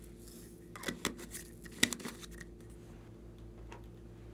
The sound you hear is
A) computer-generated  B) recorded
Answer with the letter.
B